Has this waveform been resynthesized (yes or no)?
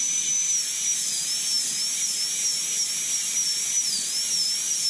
no